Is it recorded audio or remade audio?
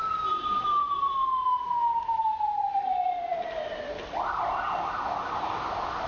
recorded